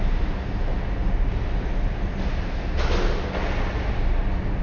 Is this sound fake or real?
real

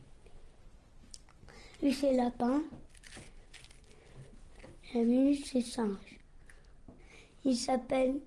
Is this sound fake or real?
real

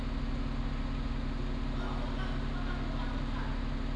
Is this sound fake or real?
real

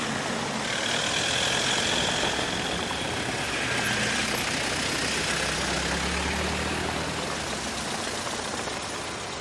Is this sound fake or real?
real